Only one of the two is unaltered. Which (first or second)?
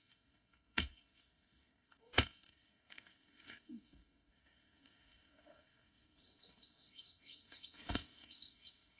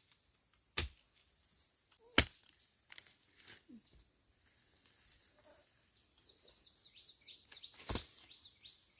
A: second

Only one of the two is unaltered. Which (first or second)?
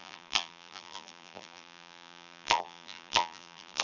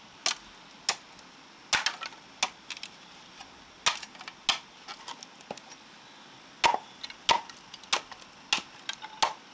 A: second